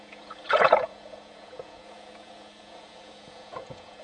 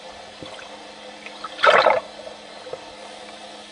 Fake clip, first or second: first